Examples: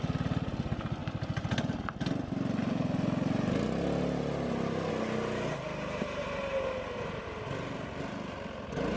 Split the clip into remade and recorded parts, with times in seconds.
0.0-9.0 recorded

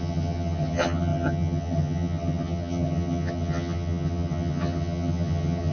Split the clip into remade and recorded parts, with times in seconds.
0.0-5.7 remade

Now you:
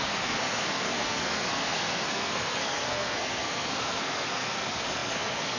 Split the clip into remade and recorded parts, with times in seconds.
0.0-5.6 remade

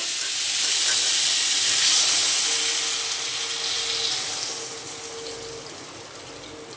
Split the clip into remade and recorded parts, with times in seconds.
0.0-6.8 recorded